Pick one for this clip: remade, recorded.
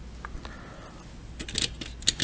recorded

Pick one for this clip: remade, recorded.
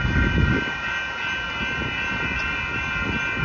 recorded